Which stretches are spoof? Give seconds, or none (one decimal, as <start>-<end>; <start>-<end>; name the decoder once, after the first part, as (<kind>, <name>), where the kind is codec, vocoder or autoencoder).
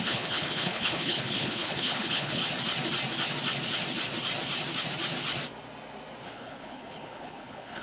0.0-2.4 (codec, HILCodec); 6.2-7.8